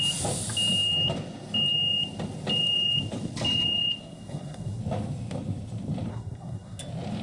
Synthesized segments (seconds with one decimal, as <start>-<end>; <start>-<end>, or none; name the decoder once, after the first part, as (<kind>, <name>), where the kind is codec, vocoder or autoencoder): 4.0-4.8 (codec, SNAC); 6.1-6.8